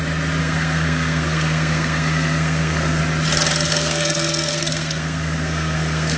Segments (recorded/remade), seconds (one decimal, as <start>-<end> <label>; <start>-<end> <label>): 0.0-0.4 recorded; 0.4-3.0 remade; 3.0-3.7 recorded; 3.7-6.2 remade

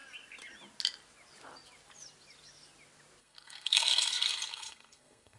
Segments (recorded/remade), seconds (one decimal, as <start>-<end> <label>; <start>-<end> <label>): 0.0-3.2 recorded; 3.2-5.4 remade

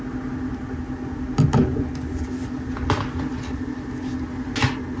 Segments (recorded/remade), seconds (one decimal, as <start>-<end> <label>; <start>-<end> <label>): 0.0-5.0 recorded

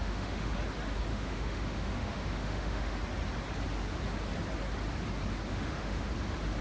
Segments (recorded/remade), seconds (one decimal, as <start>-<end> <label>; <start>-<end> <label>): 0.0-0.5 remade; 0.5-1.1 recorded; 1.1-3.0 remade; 3.0-5.5 recorded; 5.5-6.1 remade; 6.1-6.6 recorded